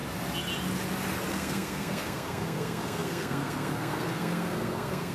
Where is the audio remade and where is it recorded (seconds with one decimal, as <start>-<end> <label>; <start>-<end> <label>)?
0.0-1.3 recorded; 1.3-5.1 remade